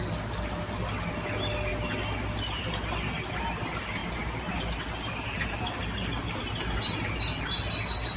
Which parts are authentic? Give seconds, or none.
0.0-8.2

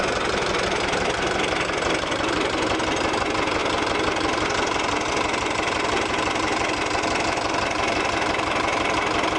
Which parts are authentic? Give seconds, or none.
0.0-9.4

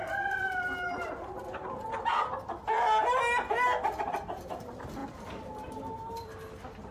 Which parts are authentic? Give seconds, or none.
1.1-5.0; 6.3-6.9

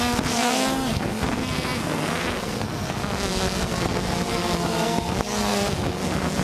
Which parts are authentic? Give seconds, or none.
none

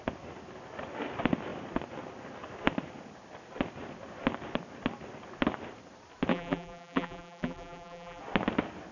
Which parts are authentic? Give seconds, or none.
0.0-6.3; 8.2-8.9

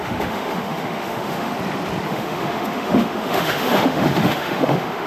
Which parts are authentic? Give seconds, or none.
1.5-2.1

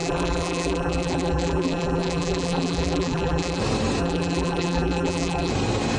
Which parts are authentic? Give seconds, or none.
3.6-4.0; 5.5-6.0